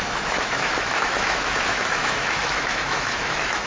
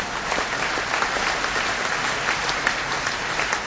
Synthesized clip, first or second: first